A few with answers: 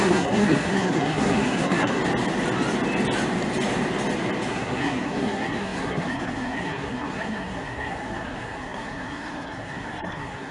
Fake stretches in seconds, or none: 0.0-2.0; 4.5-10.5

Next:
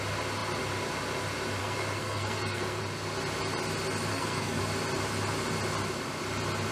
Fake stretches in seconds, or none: 1.6-2.8; 4.1-4.6

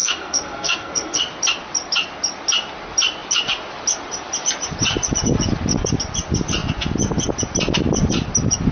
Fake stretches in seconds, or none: 0.0-1.2

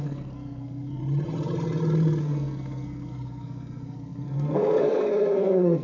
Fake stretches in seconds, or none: 0.0-1.0; 2.2-5.8

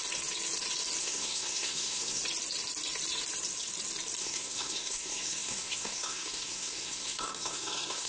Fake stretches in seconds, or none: 1.0-2.2; 4.2-8.1

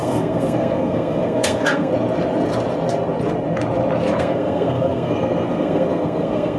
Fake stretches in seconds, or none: 0.0-1.9; 4.2-6.6